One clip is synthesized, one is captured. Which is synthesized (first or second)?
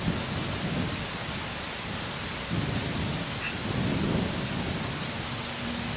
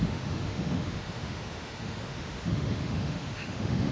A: second